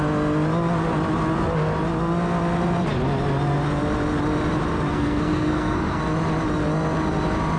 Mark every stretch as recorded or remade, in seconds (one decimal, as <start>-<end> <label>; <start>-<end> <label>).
0.0-4.9 recorded; 4.9-6.0 remade; 6.0-7.6 recorded